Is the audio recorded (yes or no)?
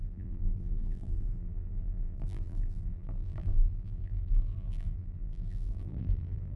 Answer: no